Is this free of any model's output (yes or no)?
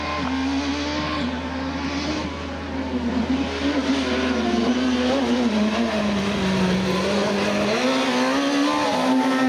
yes